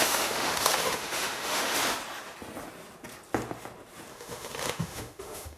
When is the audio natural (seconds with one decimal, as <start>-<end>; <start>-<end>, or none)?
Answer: 1.8-4.1